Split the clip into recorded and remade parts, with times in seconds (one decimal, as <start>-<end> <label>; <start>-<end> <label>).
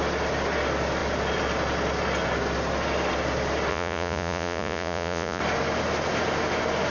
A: 0.0-3.7 recorded; 3.7-5.4 remade; 5.4-6.9 recorded